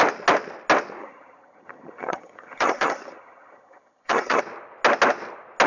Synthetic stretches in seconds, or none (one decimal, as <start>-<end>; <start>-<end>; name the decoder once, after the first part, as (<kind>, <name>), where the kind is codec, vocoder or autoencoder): 1.0-4.4 (vocoder, HiFi-GAN)